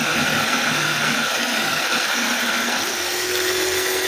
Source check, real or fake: fake